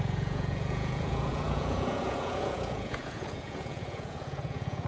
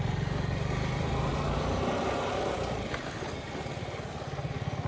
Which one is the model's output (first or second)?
first